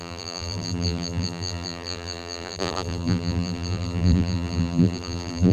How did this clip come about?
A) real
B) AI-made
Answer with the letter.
B